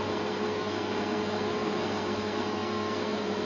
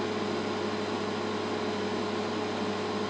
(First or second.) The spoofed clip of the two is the first